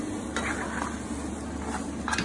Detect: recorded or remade recorded